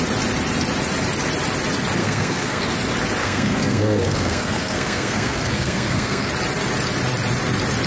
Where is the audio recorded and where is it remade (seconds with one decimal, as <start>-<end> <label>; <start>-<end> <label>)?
0.0-2.0 recorded; 2.0-2.7 remade; 2.7-3.2 recorded; 3.2-6.3 remade; 6.3-7.9 recorded